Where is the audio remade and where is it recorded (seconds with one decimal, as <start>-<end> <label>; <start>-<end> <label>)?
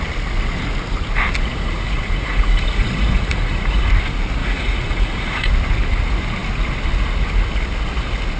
0.0-1.5 recorded; 1.5-3.9 remade; 3.9-4.4 recorded; 4.4-5.5 remade; 5.5-8.4 recorded